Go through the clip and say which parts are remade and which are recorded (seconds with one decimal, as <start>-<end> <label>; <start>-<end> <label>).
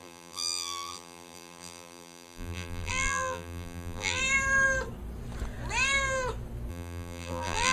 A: 0.0-4.2 remade; 4.2-6.7 recorded; 6.7-7.7 remade